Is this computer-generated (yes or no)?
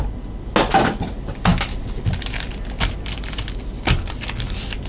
no